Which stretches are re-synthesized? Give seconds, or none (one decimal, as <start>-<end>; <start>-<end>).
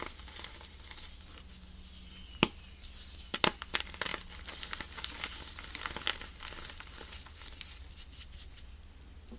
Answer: none